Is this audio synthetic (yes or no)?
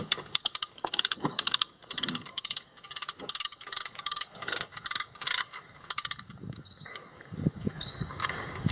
yes